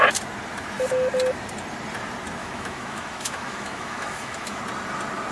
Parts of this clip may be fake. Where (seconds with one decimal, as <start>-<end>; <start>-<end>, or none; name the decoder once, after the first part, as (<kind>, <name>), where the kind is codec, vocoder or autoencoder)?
2.4-4.6 (autoencoder, DAC-VAE)